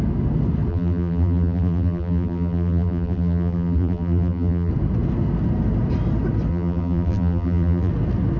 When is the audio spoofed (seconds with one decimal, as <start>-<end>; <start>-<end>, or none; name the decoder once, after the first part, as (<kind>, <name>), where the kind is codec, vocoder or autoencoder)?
0.7-4.7 (vocoder, BigVGAN v2); 6.5-7.9